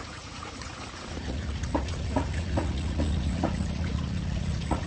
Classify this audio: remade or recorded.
remade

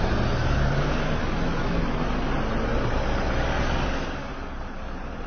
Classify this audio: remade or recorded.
recorded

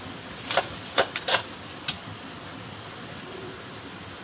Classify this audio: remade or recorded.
recorded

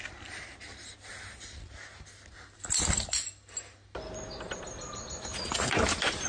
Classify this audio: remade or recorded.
recorded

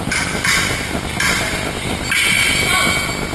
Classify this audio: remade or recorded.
recorded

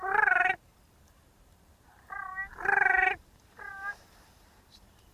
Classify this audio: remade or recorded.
remade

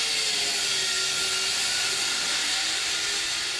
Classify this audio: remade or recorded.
recorded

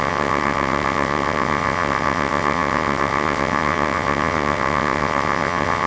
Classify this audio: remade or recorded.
remade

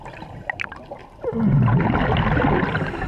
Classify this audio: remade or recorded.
recorded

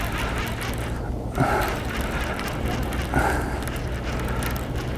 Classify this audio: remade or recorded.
recorded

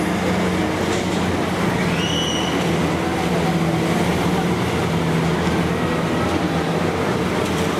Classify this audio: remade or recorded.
recorded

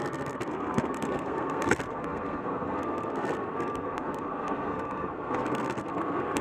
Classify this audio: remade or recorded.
remade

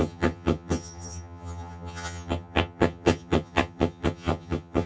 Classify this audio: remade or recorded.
remade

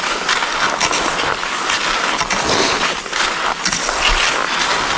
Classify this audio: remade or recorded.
recorded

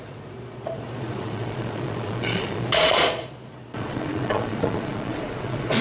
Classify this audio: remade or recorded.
remade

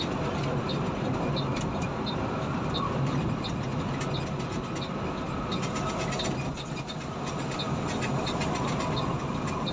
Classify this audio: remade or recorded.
recorded